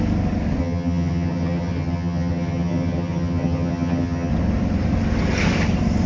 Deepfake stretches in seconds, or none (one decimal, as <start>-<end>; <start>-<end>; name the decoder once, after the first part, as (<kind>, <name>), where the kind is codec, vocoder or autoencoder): 0.6-4.3 (vocoder, HiFi-GAN)